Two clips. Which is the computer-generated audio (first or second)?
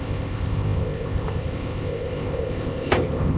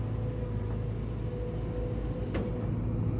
first